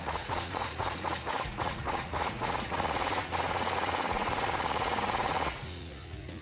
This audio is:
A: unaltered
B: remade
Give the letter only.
B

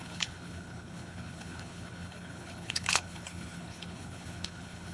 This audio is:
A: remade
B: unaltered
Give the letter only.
A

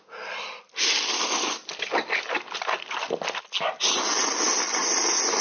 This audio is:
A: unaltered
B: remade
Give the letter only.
A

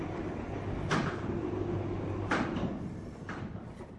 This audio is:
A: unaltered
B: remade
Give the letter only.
A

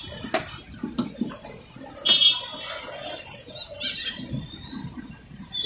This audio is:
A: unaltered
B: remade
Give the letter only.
A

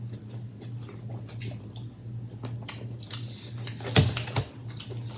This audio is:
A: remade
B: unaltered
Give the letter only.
B